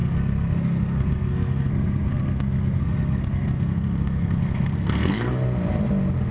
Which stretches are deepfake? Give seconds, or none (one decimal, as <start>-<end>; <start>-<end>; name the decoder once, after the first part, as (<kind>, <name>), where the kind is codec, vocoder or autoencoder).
0.0-5.3 (codec, SNAC)